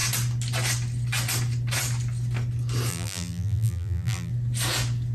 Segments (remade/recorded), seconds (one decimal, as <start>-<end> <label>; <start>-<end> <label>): 0.0-2.9 recorded; 2.9-4.3 remade; 4.3-5.1 recorded